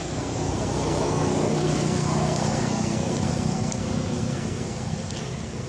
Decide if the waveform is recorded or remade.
remade